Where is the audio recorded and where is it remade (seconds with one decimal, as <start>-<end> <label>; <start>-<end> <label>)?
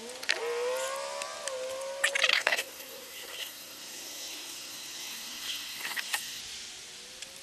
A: 0.0-2.3 recorded; 2.3-6.4 remade; 6.4-7.4 recorded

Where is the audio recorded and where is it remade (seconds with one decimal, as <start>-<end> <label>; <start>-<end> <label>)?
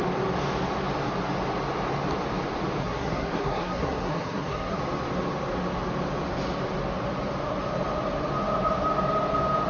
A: 0.0-2.8 recorded; 2.8-4.8 remade; 4.8-9.7 recorded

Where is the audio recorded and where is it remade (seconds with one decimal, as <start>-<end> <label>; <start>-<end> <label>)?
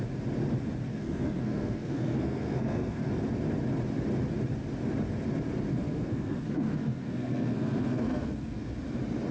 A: 0.0-0.9 recorded; 0.9-3.1 remade; 3.1-5.7 recorded; 5.7-8.7 remade; 8.7-9.3 recorded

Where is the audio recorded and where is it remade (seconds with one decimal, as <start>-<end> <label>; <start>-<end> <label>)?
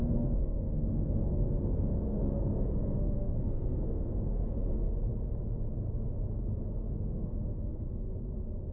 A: 0.0-5.0 remade; 5.0-6.7 recorded; 6.7-8.1 remade; 8.1-8.7 recorded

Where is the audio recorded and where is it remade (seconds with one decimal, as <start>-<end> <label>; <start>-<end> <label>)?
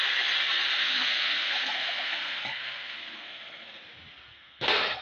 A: 0.0-0.8 recorded; 0.8-3.8 remade; 3.8-4.3 recorded; 4.3-5.0 remade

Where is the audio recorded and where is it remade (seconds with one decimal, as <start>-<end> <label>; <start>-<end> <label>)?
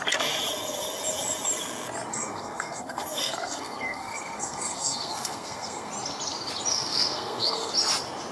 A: 0.0-2.1 recorded; 2.1-5.9 remade; 5.9-6.7 recorded; 6.7-7.7 remade; 7.7-8.3 recorded